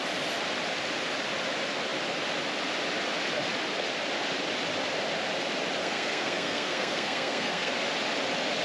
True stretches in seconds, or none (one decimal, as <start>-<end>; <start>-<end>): 0.0-5.8; 7.7-8.6